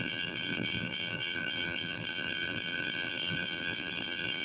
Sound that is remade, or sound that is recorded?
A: remade